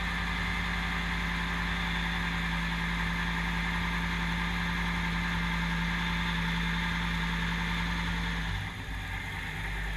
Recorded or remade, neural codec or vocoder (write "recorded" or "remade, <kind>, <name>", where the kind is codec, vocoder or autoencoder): recorded